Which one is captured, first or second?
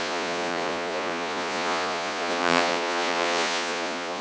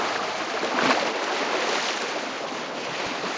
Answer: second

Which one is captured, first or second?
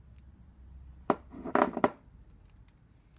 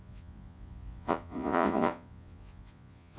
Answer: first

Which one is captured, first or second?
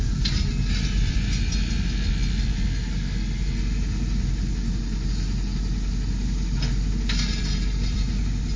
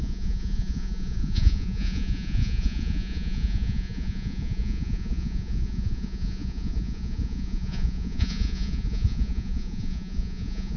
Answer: first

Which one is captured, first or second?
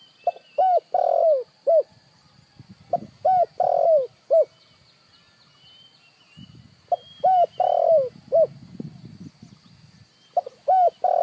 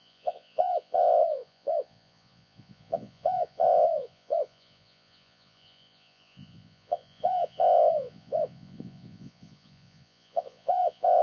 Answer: first